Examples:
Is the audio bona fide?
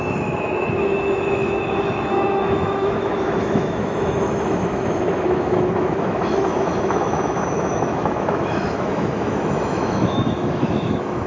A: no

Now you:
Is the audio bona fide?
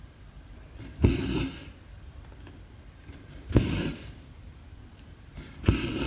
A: no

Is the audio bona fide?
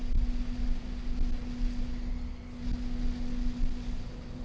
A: yes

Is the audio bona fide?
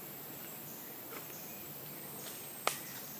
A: yes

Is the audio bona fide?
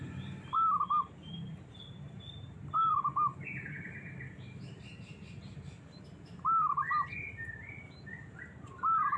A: no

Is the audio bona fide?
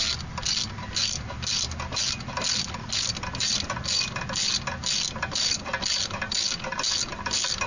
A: yes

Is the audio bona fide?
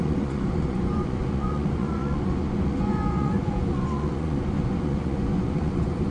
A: no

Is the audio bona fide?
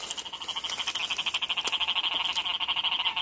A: yes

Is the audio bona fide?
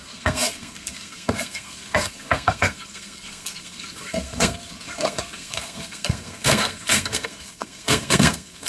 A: no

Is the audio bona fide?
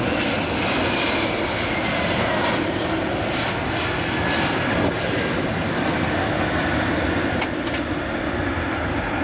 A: yes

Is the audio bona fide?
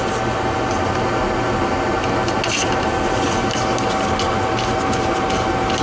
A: yes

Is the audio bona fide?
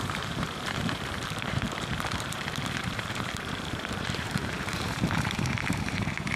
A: no